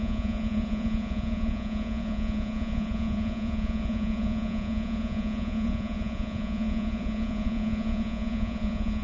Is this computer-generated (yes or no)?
yes